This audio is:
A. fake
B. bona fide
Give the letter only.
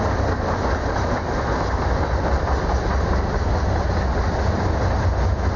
B